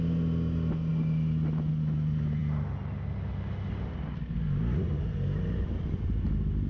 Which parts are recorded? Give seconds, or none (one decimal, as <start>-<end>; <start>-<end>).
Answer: 0.0-6.7